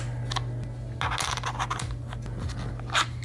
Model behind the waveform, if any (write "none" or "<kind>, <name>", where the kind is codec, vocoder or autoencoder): none